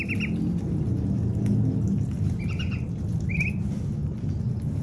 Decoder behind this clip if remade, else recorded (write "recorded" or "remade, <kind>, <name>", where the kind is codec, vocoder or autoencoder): recorded